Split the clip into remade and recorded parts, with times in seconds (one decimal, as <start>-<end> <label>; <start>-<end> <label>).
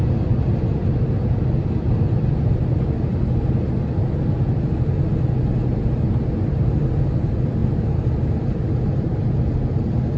0.0-7.6 recorded; 7.6-9.4 remade; 9.4-10.2 recorded